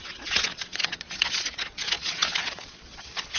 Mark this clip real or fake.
fake